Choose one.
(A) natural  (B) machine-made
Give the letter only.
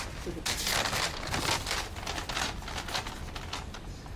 A